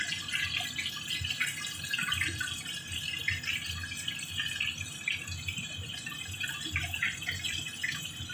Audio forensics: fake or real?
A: real